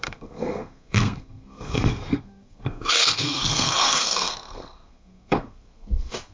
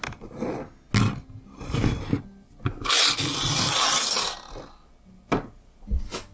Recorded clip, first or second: second